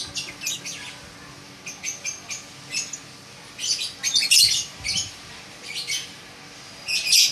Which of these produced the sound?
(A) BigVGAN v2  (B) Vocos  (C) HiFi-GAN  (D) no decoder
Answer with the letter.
D